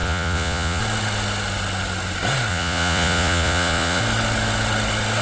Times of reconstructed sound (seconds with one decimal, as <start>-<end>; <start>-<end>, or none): 0.0-0.8; 2.5-4.0